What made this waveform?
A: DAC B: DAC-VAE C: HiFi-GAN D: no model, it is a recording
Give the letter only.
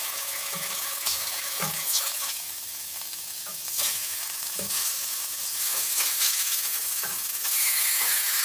B